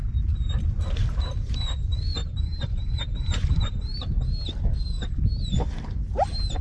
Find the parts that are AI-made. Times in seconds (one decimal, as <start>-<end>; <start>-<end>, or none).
2.2-3.7